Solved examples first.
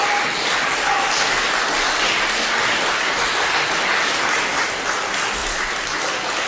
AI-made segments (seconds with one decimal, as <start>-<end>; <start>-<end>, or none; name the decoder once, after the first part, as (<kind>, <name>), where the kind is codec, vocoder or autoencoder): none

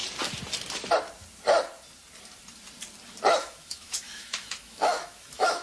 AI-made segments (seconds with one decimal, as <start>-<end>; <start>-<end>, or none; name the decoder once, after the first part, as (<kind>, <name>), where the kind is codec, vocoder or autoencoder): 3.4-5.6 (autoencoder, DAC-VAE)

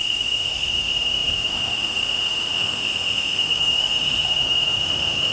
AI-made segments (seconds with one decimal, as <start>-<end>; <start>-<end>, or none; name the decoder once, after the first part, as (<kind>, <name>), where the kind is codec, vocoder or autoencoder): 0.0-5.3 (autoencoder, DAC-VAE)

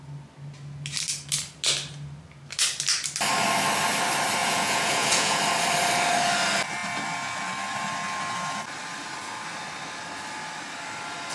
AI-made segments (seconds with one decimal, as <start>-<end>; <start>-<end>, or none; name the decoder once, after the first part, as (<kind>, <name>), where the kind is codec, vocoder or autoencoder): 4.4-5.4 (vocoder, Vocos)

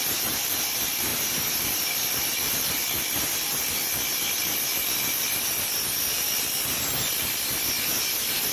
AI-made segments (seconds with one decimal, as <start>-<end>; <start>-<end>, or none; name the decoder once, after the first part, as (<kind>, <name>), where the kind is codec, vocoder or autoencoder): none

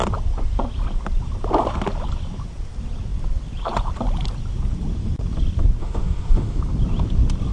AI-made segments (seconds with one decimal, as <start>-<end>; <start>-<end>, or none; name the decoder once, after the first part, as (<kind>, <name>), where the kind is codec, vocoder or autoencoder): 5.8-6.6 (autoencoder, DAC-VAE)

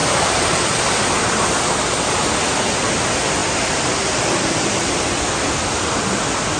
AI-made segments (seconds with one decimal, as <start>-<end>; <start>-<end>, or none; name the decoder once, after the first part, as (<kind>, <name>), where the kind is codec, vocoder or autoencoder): 0.0-0.8 (vocoder, BigVGAN v2)

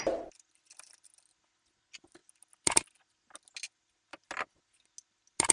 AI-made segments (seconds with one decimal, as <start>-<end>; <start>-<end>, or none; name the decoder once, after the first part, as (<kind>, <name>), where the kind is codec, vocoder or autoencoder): none